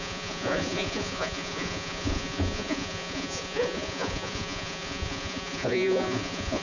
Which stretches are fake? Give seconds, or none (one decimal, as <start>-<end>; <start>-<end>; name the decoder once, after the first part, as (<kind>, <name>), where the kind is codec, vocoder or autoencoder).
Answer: 0.0-6.6 (vocoder, Vocos)